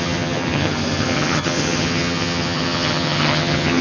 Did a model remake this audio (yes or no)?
yes